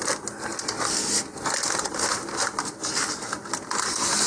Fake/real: real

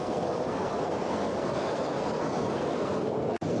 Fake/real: fake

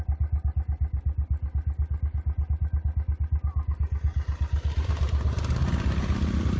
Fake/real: real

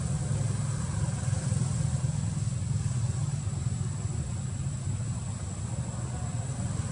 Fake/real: real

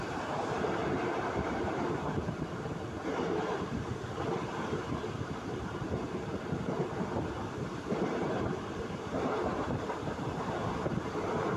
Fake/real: fake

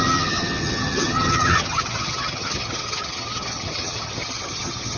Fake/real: fake